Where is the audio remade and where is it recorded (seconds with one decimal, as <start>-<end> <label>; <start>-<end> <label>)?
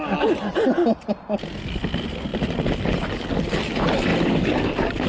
0.0-5.1 recorded